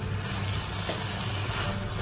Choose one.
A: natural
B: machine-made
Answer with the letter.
A